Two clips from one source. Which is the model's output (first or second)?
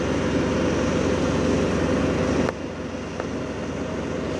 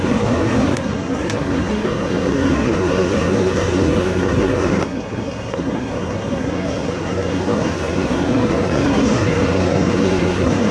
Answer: second